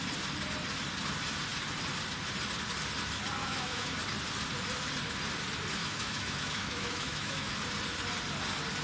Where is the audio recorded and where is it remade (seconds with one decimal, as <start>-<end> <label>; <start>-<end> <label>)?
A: 0.0-3.4 recorded; 3.4-4.0 remade; 4.0-5.8 recorded; 5.8-7.5 remade; 7.5-8.8 recorded